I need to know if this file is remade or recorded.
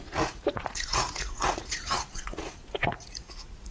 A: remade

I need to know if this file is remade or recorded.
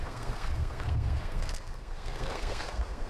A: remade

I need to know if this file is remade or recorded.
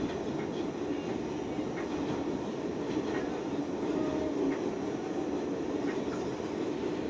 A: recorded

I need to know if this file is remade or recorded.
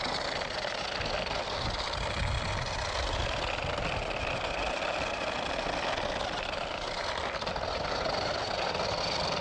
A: recorded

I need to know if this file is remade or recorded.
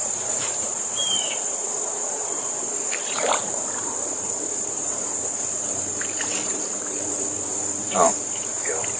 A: remade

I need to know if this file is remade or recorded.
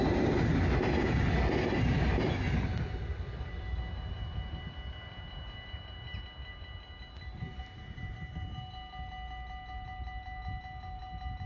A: recorded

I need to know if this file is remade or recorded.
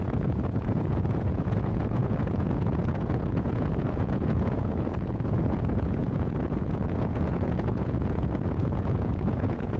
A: remade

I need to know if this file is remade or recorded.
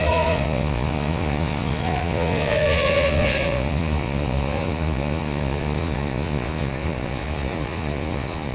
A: remade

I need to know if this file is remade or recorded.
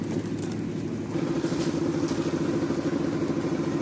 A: recorded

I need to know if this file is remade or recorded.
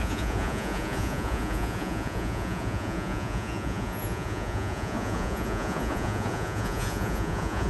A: remade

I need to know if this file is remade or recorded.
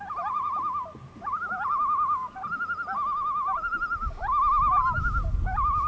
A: recorded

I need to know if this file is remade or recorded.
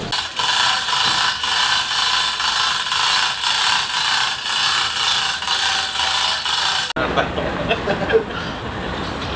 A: recorded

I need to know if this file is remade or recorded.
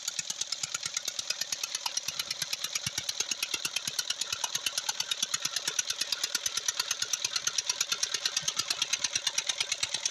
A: recorded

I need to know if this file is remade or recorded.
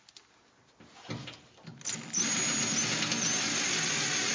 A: recorded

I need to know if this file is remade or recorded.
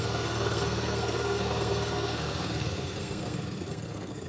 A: remade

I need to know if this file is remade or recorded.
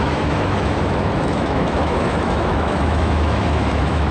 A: remade